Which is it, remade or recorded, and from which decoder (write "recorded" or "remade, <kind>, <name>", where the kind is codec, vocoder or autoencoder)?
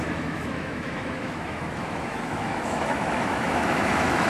remade, autoencoder, DAC-VAE